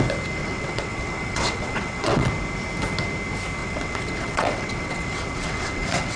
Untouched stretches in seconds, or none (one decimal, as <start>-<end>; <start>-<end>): 0.0-0.4; 2.3-3.6